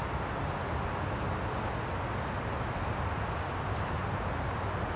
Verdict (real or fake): real